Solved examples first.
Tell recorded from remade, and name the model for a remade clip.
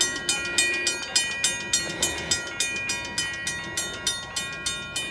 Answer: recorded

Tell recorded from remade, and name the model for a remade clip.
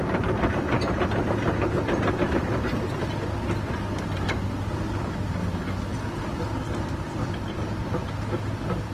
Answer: recorded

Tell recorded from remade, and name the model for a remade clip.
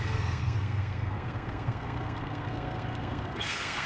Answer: remade, codec, SNAC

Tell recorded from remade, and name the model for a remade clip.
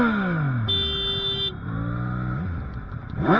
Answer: recorded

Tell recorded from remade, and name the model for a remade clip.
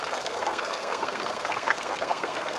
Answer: remade, codec, SNAC